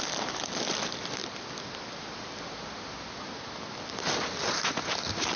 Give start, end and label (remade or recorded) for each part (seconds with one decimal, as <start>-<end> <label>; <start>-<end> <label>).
0.0-5.4 recorded